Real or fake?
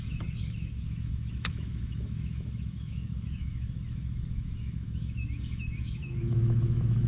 fake